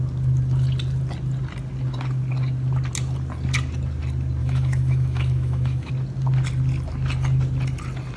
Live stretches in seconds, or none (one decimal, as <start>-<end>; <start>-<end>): 0.0-4.4; 5.9-8.2